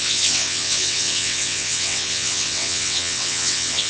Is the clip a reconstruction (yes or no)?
yes